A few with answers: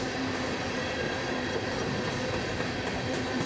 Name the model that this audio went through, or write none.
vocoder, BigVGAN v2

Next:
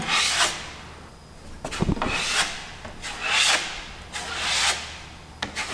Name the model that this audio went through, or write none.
none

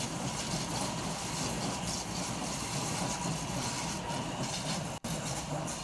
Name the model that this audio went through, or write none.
none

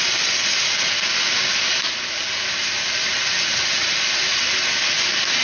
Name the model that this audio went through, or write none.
none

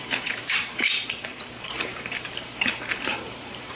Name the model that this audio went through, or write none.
vocoder, BigVGAN v2